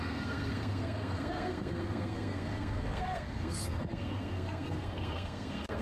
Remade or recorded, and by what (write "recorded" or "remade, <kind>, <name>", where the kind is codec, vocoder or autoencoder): remade, codec, SNAC